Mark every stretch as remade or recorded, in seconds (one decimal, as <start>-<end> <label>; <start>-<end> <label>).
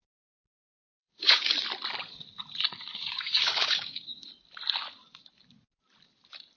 0.0-0.5 recorded; 0.5-1.5 remade; 1.5-2.9 recorded; 2.9-4.3 remade; 4.3-6.6 recorded